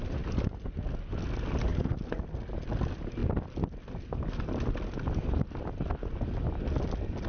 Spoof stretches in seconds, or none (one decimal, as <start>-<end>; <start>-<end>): none